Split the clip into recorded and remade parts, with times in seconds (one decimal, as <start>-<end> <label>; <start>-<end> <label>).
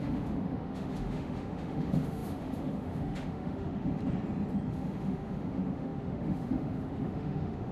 0.0-4.0 remade; 4.0-4.7 recorded; 4.7-7.7 remade